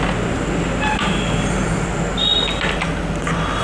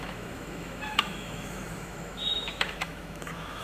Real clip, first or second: first